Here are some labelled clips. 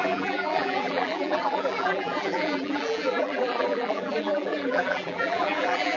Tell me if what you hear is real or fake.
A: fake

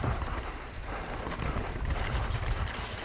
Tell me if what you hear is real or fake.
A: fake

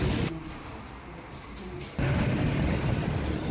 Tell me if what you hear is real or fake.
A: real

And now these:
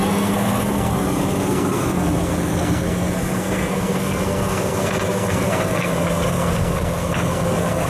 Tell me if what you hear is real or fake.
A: fake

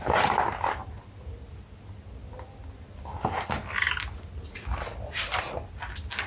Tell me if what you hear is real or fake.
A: real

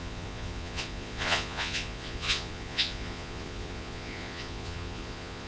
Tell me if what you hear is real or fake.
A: fake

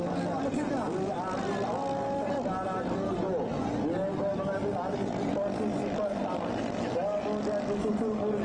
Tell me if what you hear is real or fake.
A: real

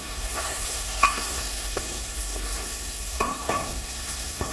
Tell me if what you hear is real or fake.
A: fake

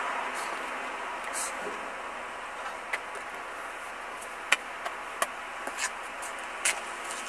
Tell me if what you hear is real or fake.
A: real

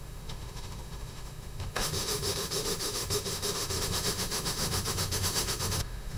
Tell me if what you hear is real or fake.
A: fake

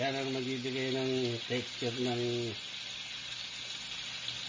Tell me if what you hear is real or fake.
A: real